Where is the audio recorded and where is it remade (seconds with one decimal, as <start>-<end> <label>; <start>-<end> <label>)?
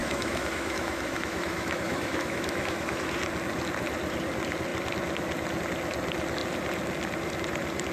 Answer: 0.0-3.1 remade; 3.1-7.9 recorded